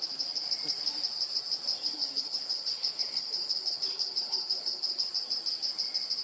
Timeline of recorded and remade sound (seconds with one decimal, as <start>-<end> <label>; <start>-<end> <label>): 0.0-1.7 recorded; 1.7-5.1 remade; 5.1-6.2 recorded